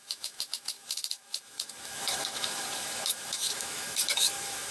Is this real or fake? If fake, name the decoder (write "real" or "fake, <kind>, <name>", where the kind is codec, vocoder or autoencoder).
fake, autoencoder, DAC-VAE